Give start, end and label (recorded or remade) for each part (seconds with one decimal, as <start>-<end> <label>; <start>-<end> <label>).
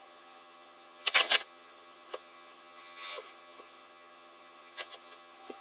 0.0-5.6 remade